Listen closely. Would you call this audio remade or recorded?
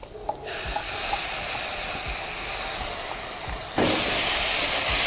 recorded